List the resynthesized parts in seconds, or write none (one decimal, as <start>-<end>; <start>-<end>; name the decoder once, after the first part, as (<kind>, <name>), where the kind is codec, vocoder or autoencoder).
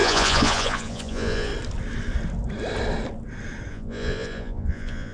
0.0-1.5 (vocoder, Vocos); 3.7-5.1